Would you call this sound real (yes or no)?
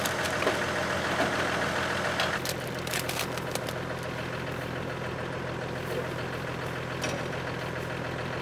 yes